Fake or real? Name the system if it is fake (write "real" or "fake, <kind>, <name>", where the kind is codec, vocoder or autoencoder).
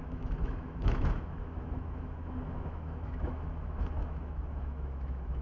fake, autoencoder, DAC-VAE